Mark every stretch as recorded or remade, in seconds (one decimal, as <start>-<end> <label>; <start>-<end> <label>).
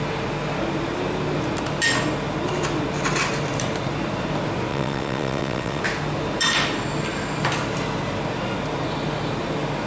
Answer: 0.0-4.7 recorded; 4.7-5.8 remade; 5.8-9.9 recorded